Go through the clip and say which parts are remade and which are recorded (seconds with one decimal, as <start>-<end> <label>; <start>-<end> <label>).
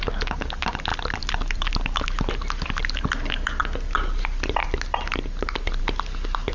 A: 0.0-0.9 recorded; 0.9-2.3 remade; 2.3-6.5 recorded